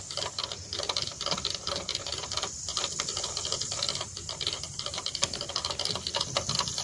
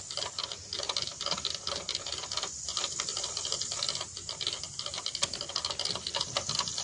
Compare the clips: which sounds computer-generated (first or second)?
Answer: first